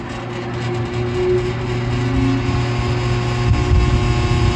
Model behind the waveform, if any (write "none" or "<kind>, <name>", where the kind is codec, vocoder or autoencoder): none